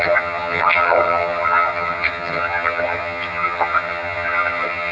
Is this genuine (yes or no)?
no